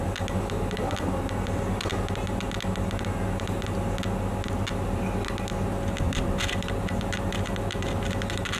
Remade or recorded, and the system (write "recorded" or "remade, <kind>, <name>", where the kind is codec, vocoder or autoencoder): recorded